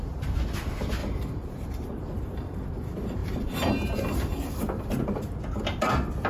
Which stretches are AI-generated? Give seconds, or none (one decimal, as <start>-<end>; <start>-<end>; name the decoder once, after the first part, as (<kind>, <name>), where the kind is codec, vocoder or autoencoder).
1.0-1.7 (vocoder, BigVGAN v2); 3.2-4.9